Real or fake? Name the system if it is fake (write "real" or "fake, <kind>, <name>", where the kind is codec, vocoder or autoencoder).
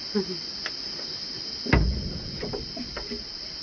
real